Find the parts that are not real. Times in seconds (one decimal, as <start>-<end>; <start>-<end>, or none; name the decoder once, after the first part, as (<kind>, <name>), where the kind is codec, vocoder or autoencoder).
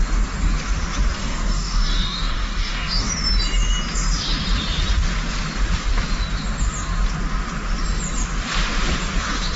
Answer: 1.2-3.1 (codec, DAC)